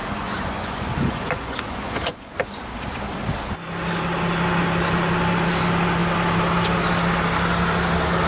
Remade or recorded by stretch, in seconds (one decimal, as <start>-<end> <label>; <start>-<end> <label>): 0.0-2.7 remade; 2.7-8.3 recorded